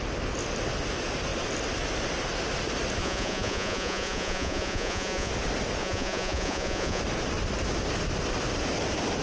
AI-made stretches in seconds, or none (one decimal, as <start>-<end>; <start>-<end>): 3.0-5.3; 5.8-7.0